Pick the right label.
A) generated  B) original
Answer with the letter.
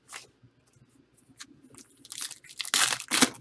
B